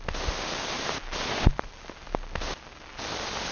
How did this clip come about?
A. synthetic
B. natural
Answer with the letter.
B